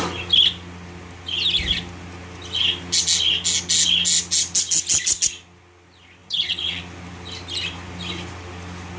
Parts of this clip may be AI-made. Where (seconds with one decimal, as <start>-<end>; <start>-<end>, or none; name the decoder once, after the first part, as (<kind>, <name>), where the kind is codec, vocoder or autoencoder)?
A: 6.2-6.8 (vocoder, WaveNeXt)